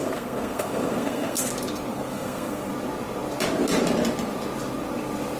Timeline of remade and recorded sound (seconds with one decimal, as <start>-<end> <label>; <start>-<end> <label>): 0.0-1.5 remade; 1.5-1.9 recorded; 1.9-2.7 remade; 2.7-5.4 recorded